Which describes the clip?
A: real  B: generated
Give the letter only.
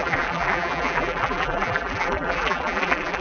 B